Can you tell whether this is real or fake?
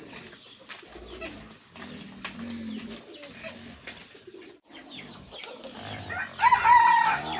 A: real